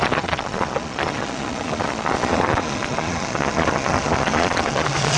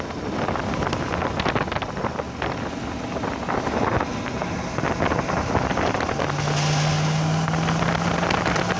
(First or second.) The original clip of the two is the second